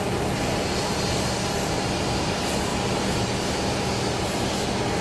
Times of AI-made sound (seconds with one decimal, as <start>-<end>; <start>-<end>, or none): none